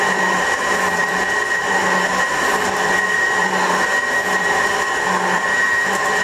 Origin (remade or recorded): remade